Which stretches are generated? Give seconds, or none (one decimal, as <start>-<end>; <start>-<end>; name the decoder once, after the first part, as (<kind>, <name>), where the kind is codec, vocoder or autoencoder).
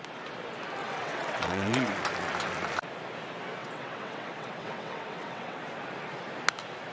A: 0.8-1.9 (vocoder, WaveNeXt); 3.6-5.6